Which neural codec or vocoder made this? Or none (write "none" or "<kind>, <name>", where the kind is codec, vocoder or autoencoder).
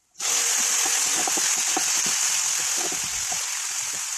none